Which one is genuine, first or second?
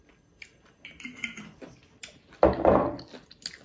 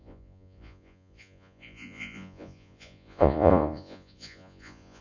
first